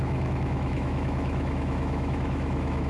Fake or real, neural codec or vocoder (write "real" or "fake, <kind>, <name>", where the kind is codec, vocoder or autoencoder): fake, autoencoder, DAC-VAE